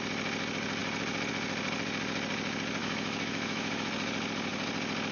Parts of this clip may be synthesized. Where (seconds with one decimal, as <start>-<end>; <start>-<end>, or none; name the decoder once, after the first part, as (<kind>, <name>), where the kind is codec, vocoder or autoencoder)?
2.8-3.9 (autoencoder, DAC-VAE)